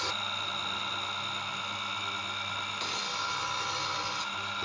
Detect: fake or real real